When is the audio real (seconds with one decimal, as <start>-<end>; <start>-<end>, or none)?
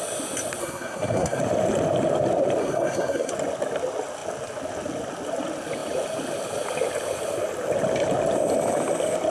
0.0-0.6; 1.4-2.6; 3.3-9.3